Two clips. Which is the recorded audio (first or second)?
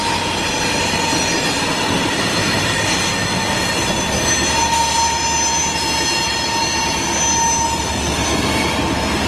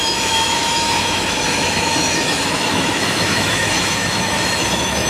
first